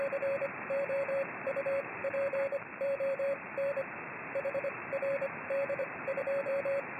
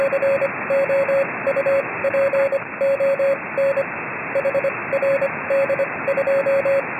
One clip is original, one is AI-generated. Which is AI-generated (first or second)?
first